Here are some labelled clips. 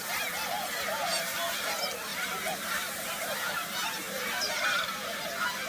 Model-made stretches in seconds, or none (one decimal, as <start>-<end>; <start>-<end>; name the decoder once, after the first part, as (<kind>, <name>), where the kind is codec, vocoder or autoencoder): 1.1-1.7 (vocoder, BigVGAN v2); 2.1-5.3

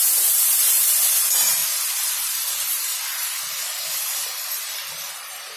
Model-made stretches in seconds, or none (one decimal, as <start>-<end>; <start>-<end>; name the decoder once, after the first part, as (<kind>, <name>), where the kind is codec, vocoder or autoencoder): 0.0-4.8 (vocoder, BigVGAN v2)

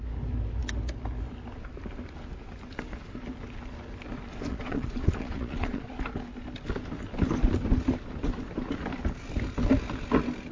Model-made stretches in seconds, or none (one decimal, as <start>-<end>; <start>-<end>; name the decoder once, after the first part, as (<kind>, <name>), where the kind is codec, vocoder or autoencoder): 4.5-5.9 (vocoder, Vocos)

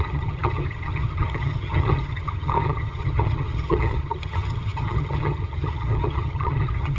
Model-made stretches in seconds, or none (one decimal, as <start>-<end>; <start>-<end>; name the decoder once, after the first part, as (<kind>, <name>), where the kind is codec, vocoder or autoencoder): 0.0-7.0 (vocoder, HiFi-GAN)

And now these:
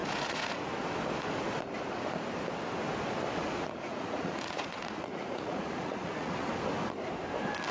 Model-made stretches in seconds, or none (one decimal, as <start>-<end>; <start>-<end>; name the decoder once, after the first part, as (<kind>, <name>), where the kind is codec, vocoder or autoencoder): 0.0-0.7 (vocoder, Vocos); 3.4-6.5